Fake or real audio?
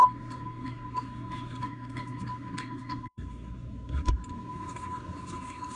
fake